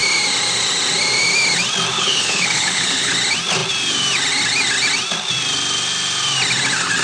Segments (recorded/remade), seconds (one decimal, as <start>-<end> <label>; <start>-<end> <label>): 0.0-1.9 recorded; 1.9-3.1 remade; 3.1-7.0 recorded